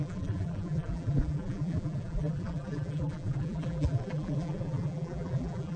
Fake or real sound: fake